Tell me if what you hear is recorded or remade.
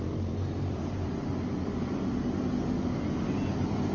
recorded